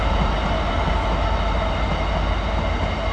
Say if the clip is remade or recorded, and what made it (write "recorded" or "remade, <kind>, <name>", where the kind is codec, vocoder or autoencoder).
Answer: recorded